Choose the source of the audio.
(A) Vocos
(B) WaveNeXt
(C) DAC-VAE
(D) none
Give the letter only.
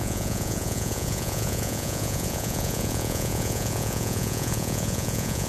A